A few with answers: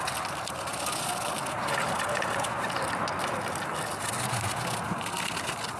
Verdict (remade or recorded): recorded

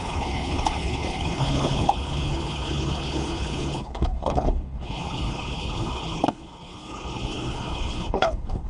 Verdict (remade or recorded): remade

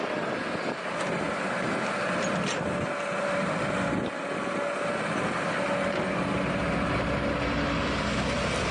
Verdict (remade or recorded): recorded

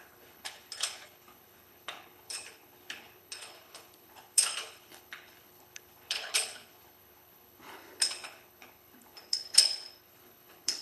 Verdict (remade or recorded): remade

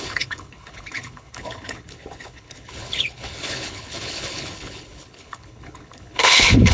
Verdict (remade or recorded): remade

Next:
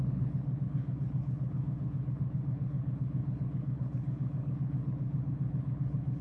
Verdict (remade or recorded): remade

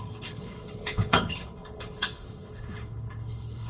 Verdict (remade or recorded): remade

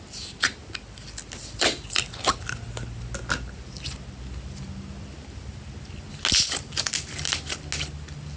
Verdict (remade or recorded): recorded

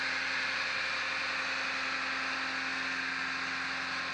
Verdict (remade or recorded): recorded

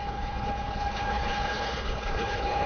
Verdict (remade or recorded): remade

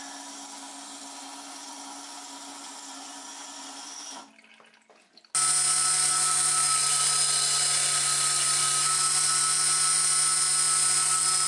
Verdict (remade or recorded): recorded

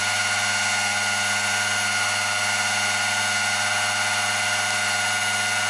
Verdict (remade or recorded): recorded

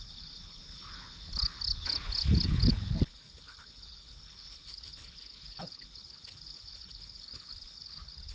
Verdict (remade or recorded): remade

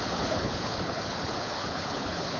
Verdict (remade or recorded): remade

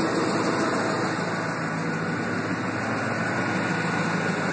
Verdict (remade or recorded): recorded